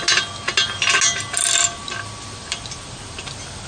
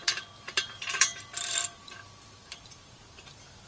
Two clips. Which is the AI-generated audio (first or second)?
second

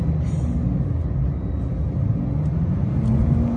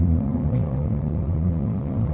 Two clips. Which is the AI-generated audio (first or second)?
second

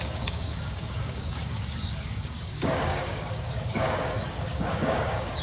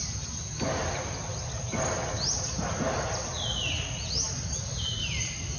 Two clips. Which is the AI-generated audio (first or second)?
first